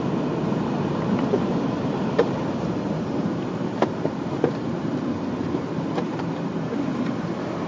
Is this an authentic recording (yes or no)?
no